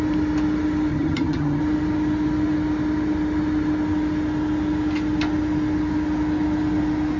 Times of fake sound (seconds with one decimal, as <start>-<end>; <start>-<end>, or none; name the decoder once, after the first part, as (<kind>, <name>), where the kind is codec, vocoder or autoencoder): 0.9-1.6 (vocoder, HiFi-GAN)